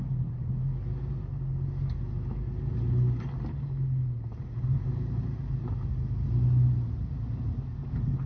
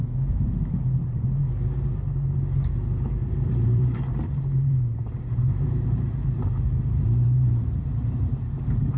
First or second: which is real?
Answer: first